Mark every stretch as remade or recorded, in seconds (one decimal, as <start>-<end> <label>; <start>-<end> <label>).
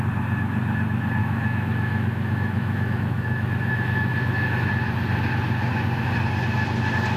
0.0-1.2 recorded; 1.2-4.7 remade; 4.7-7.2 recorded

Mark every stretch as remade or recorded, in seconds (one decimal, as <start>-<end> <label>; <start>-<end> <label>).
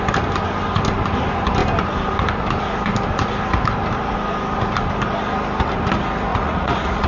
0.0-6.3 recorded; 6.3-7.1 remade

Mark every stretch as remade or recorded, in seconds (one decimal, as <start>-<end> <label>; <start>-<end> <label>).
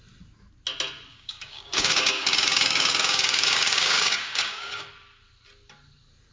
0.0-1.1 recorded; 1.1-4.9 remade; 4.9-6.3 recorded